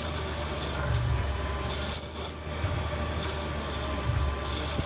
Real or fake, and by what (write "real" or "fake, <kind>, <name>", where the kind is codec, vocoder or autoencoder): real